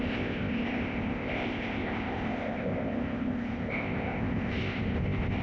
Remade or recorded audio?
remade